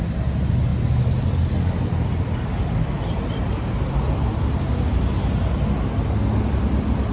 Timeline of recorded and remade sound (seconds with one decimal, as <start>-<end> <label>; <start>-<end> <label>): 0.0-7.1 recorded